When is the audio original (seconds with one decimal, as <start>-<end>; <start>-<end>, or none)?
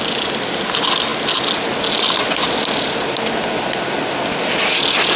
0.0-5.2